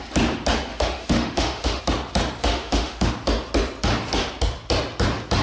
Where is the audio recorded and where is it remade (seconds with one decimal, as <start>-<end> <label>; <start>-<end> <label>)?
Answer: 0.0-0.7 recorded; 0.7-1.8 remade; 1.8-2.4 recorded; 2.4-3.1 remade; 3.1-5.4 recorded